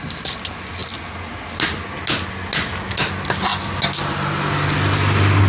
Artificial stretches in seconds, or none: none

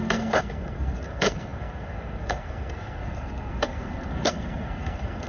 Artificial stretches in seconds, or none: 0.0-5.3 (codec, SNAC)